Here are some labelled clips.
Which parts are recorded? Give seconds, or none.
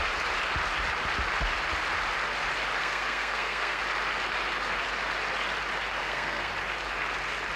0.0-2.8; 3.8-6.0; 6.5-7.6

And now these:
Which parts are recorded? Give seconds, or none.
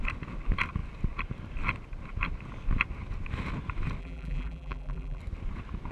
0.0-4.0; 5.2-5.9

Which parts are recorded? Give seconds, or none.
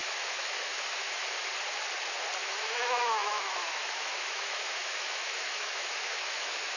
1.2-2.4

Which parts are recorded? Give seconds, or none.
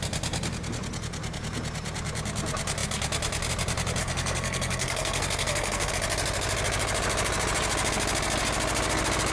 0.0-4.0; 5.9-9.3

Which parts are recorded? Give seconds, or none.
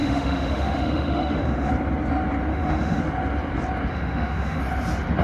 1.7-2.5; 3.0-3.9; 4.6-5.2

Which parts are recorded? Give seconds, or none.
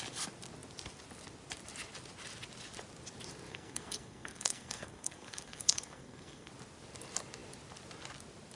0.0-3.5; 6.5-8.6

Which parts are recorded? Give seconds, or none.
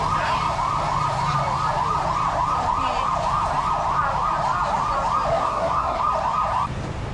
0.0-5.3; 6.0-7.1